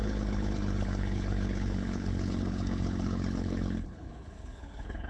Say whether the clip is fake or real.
fake